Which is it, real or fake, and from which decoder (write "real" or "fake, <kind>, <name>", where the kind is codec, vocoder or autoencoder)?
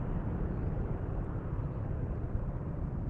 real